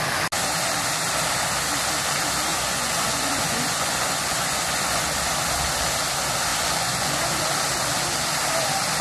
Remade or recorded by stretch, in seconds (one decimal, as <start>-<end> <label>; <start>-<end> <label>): 0.0-2.5 recorded; 2.5-5.0 remade; 5.0-6.5 recorded; 6.5-7.3 remade; 7.3-9.0 recorded